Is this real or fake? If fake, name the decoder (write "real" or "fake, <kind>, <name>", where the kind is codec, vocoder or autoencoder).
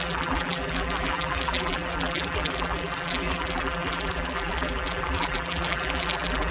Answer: fake, vocoder, BigVGAN v2